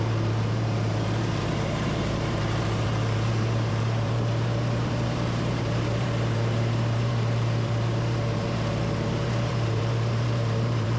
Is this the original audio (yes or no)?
no